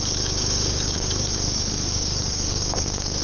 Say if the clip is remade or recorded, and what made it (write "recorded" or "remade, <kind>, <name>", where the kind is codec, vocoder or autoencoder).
remade, codec, DAC